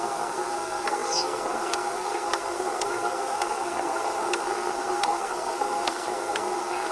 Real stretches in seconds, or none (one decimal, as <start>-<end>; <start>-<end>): none